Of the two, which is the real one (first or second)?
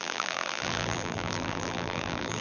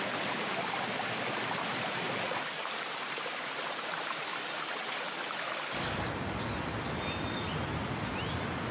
second